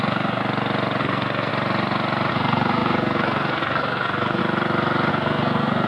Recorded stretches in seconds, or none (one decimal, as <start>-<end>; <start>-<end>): 0.4-1.0; 1.5-2.3; 4.4-5.1